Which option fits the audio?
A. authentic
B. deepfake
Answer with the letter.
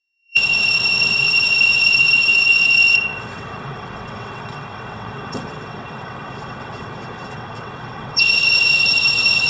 B